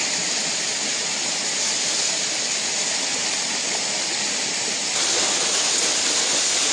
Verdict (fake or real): fake